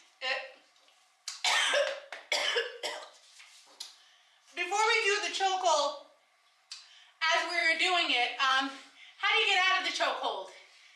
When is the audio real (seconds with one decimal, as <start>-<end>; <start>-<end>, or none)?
0.0-2.4; 3.4-5.5; 7.0-7.6; 8.6-11.0